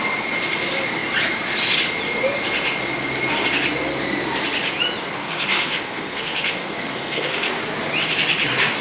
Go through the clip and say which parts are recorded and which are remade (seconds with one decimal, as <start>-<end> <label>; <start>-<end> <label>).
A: 0.0-5.2 recorded; 5.2-7.6 remade; 7.6-8.8 recorded